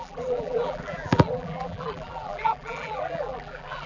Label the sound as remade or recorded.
remade